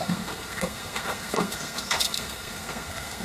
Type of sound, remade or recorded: remade